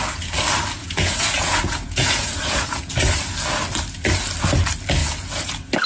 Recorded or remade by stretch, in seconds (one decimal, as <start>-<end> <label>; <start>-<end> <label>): 0.0-0.8 recorded; 0.8-3.0 remade; 3.0-5.0 recorded; 5.0-5.5 remade; 5.5-5.9 recorded